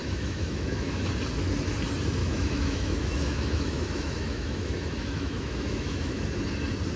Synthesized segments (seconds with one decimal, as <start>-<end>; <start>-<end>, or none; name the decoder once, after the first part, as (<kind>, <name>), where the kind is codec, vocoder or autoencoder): 0.0-1.1 (autoencoder, DAC-VAE); 2.2-6.4